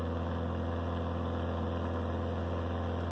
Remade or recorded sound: recorded